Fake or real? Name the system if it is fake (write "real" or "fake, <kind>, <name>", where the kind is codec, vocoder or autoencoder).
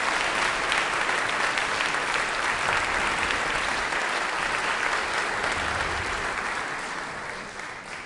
real